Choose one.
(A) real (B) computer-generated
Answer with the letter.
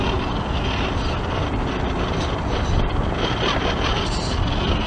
A